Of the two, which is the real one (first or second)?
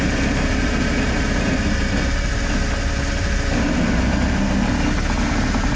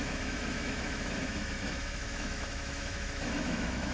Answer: first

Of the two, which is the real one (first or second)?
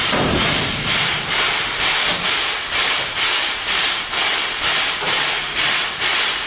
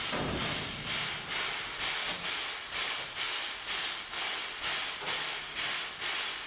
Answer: second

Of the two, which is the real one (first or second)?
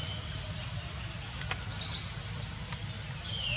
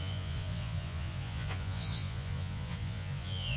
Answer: first